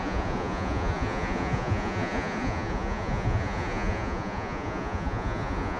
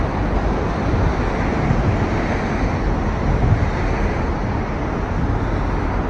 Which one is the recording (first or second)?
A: second